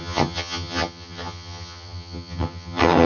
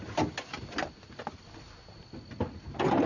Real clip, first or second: second